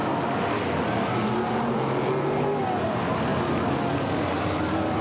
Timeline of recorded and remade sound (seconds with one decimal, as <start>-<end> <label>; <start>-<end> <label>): 0.0-5.0 recorded